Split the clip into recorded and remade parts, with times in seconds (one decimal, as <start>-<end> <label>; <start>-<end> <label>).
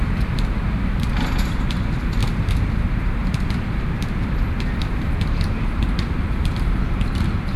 0.0-7.6 remade